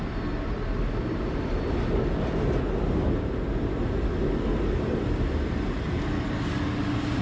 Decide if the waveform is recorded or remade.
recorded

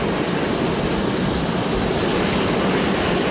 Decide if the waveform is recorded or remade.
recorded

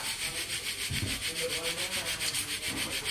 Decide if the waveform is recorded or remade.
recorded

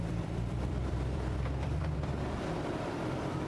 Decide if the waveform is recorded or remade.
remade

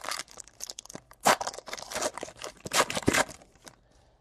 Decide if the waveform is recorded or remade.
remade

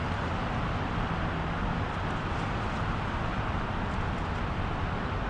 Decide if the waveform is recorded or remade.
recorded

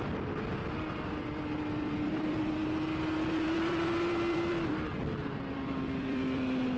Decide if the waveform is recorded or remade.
remade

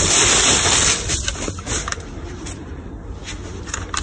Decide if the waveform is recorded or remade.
recorded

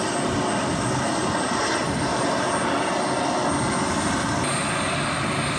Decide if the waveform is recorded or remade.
recorded